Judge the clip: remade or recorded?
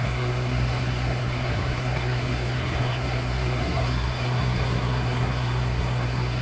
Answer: remade